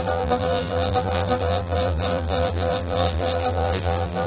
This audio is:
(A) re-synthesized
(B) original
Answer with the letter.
A